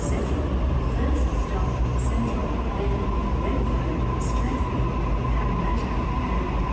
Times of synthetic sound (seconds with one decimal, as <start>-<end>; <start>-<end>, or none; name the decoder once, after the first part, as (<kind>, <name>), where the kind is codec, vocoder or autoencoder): none